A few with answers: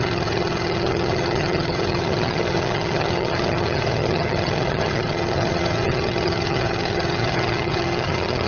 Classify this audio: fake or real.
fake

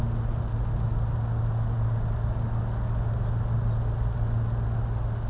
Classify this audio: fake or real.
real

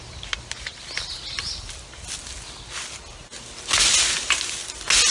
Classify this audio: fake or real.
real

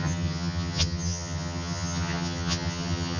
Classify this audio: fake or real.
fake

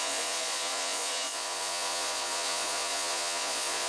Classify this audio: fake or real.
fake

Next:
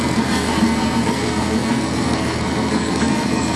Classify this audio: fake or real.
fake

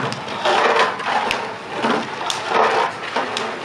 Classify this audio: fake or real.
real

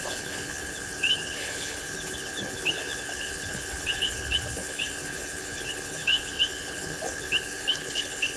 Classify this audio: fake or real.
fake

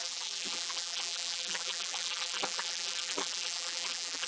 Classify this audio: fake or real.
fake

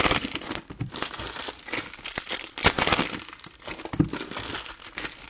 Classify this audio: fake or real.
real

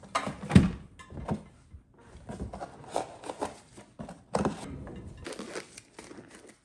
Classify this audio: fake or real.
real